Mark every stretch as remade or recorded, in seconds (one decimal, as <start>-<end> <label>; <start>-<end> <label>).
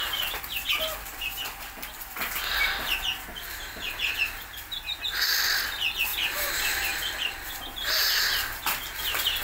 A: 0.0-6.1 recorded; 6.1-7.0 remade; 7.0-7.8 recorded; 7.8-8.6 remade; 8.6-9.4 recorded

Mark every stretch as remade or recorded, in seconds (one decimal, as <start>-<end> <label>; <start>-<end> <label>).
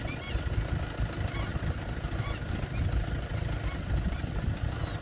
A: 0.0-5.0 recorded